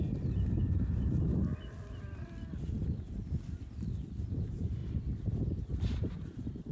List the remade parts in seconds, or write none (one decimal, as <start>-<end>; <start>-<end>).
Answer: 0.0-1.3; 4.3-4.8; 5.6-6.7